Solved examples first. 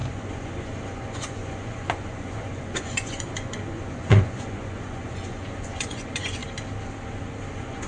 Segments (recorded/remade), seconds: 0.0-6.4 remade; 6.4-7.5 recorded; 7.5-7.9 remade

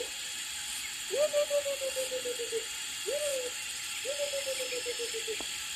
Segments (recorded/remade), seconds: 0.0-1.3 recorded; 1.3-2.7 remade; 2.7-3.3 recorded; 3.3-4.6 remade; 4.6-5.8 recorded

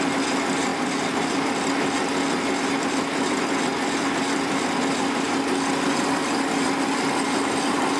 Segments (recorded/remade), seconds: 0.0-3.7 recorded; 3.7-8.0 remade

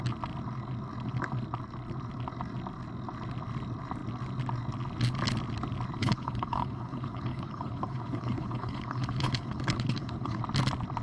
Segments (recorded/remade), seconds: 0.0-6.0 recorded; 6.0-10.4 remade; 10.4-11.0 recorded